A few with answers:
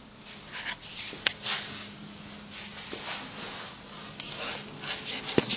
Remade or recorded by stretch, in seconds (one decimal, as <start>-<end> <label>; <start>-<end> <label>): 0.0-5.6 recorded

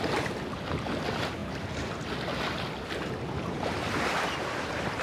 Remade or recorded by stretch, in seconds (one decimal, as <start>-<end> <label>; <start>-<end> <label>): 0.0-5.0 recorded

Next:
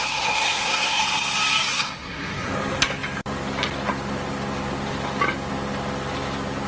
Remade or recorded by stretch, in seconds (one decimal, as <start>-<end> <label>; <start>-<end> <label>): 0.0-1.0 remade; 1.0-1.7 recorded; 1.7-2.5 remade; 2.5-6.7 recorded